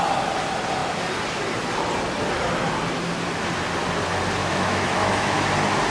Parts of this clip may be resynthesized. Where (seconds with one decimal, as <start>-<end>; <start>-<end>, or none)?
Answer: 4.4-5.4